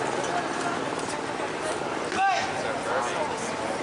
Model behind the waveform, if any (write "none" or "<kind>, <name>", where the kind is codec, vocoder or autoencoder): none